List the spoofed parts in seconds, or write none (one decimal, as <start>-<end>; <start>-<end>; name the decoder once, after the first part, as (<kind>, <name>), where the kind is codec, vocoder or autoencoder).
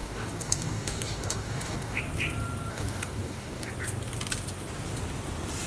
0.0-2.0 (codec, DAC); 2.7-3.7